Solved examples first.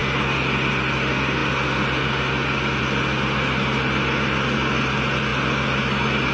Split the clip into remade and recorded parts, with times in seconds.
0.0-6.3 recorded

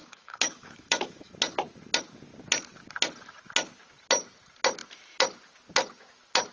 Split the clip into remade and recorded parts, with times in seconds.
0.0-1.3 remade; 1.3-6.5 recorded